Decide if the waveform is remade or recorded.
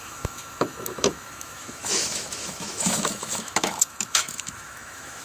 remade